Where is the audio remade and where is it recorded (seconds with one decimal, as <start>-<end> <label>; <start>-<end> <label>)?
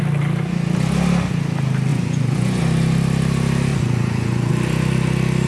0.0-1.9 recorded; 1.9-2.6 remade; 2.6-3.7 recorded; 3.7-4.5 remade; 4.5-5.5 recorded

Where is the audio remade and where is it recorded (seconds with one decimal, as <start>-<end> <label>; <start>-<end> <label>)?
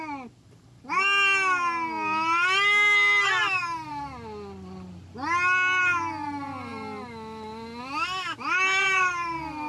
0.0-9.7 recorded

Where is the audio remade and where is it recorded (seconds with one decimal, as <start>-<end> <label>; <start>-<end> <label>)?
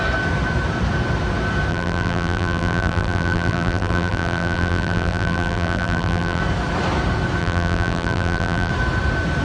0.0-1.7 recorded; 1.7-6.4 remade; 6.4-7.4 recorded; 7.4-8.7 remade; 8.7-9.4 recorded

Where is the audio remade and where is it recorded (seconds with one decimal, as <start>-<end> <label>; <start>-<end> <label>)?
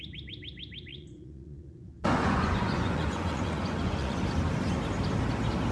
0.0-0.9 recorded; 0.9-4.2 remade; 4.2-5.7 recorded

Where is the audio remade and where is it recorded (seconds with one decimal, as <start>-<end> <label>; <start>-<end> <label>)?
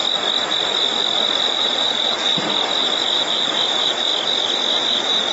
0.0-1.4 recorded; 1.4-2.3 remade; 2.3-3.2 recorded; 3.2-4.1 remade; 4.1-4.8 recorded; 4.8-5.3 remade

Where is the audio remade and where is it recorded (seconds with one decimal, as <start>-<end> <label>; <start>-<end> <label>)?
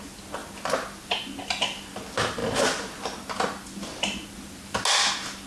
0.0-5.5 recorded